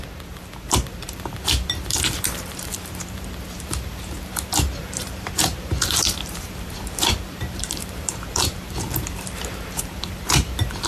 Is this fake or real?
fake